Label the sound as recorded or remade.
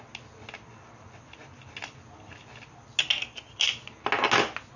recorded